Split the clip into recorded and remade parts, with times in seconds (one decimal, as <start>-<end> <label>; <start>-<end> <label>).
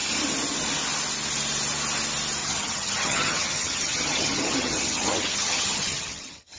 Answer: 0.0-2.4 recorded; 2.4-6.6 remade